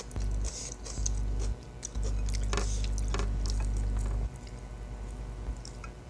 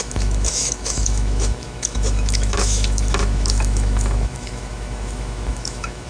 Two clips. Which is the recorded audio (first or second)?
first